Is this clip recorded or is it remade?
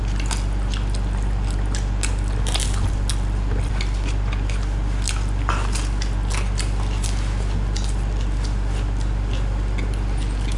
recorded